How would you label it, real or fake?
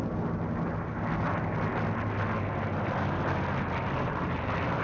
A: real